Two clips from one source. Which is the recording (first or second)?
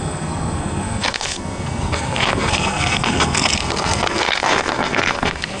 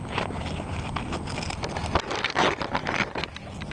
second